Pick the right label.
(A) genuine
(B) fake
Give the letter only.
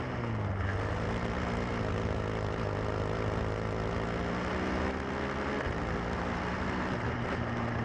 A